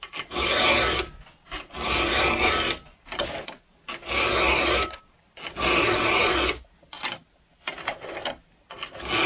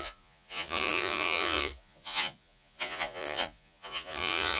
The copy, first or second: second